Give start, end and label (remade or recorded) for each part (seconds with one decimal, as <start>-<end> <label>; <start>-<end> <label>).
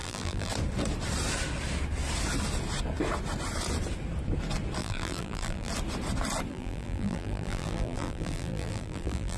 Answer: 0.0-0.5 remade; 0.5-4.8 recorded; 4.8-5.7 remade; 5.7-6.5 recorded; 6.5-9.4 remade